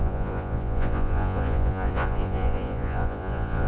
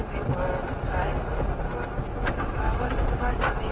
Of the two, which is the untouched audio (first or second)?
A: second